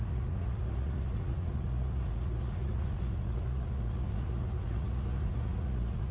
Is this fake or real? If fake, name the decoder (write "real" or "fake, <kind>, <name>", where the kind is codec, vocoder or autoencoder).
fake, vocoder, Vocos